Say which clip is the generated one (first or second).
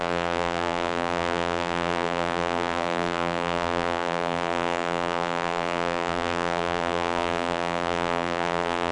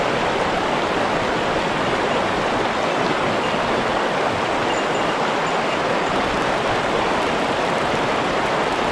first